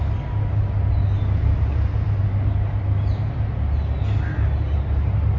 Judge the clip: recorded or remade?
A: recorded